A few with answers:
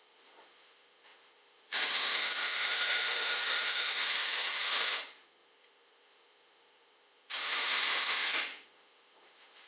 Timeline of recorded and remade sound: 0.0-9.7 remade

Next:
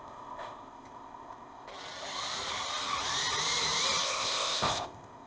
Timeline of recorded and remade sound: 0.0-1.7 remade; 1.7-4.0 recorded; 4.0-5.3 remade

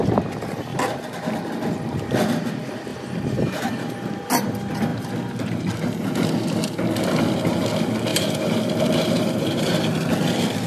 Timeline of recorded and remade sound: 0.0-2.9 recorded; 2.9-4.1 remade; 4.1-8.1 recorded; 8.1-9.8 remade; 9.8-10.7 recorded

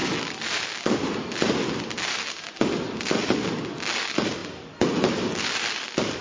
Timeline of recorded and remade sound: 0.0-2.7 remade; 2.7-6.2 recorded

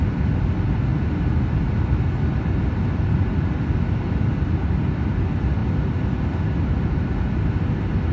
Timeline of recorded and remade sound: 0.0-8.1 recorded